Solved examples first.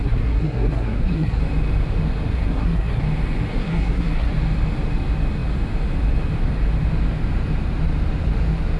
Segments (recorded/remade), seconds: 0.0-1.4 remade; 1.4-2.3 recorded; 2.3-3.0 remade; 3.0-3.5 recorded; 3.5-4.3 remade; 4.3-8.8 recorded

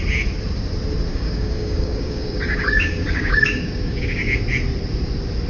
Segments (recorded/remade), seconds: 0.0-1.1 recorded; 1.1-4.4 remade; 4.4-5.5 recorded

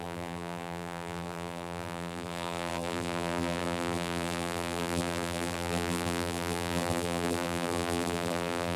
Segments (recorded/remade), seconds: 0.0-8.8 remade

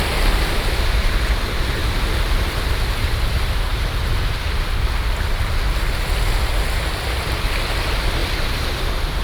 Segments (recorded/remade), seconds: 0.0-1.8 remade; 1.8-3.1 recorded; 3.1-3.7 remade; 3.7-5.7 recorded; 5.7-9.2 remade

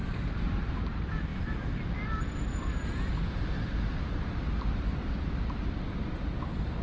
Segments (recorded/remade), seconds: 0.0-6.8 recorded

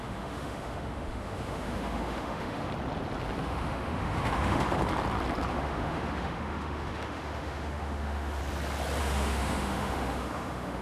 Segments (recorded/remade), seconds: 0.0-2.7 remade; 2.7-3.4 recorded; 3.4-4.8 remade; 4.8-5.5 recorded; 5.5-8.4 remade; 8.4-9.0 recorded; 9.0-10.8 remade

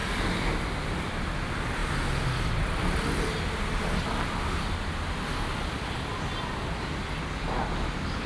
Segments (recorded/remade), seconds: 0.0-8.3 recorded